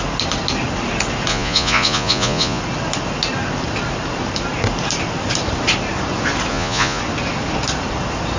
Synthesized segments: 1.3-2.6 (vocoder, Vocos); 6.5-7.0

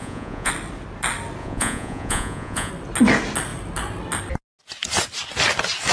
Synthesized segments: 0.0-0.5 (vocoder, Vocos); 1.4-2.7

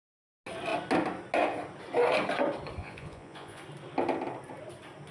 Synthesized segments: 2.8-3.6 (vocoder, Vocos)

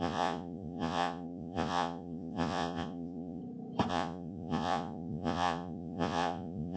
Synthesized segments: 0.0-3.4 (vocoder, Vocos); 3.9-6.8